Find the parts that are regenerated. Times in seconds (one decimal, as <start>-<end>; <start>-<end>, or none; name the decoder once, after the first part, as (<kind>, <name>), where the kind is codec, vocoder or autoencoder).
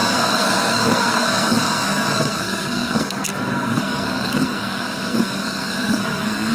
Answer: 0.0-6.5 (codec, SNAC)